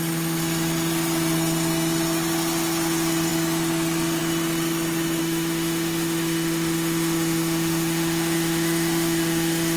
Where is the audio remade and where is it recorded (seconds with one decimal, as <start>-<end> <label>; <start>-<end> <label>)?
0.0-5.2 recorded; 5.2-9.8 remade